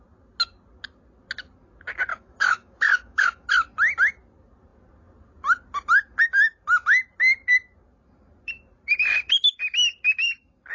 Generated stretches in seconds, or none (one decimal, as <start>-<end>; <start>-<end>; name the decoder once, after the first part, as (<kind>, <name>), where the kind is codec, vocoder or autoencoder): 2.1-3.5 (autoencoder, DAC-VAE)